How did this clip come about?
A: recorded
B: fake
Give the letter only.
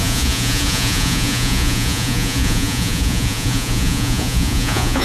B